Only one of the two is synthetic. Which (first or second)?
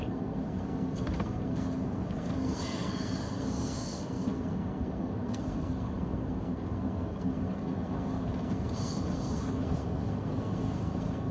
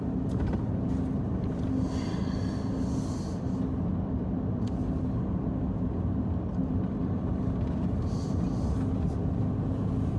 first